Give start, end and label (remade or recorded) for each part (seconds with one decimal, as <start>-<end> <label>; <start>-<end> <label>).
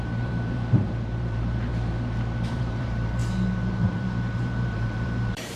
0.0-1.7 remade; 1.7-2.5 recorded; 2.5-3.2 remade; 3.2-3.7 recorded; 3.7-5.6 remade